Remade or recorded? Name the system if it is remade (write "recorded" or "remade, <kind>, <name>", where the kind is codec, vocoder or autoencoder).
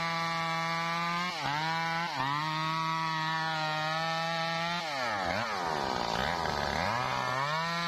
recorded